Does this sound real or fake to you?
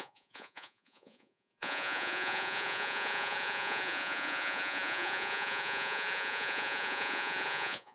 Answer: fake